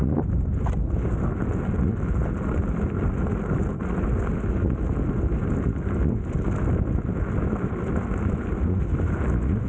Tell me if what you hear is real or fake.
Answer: real